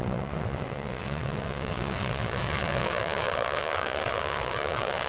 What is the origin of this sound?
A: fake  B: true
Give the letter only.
A